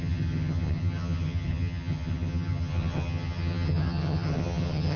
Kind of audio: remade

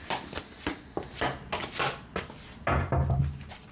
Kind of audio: recorded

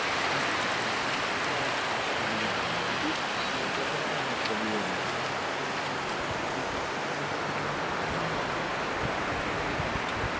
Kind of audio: recorded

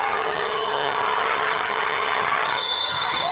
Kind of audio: remade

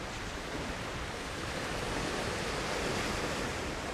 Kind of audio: recorded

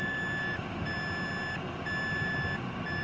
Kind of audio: recorded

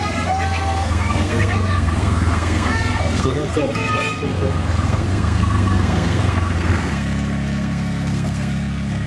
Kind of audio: remade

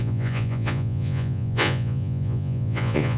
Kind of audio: remade